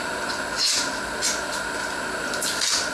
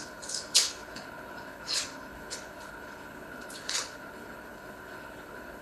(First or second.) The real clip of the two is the first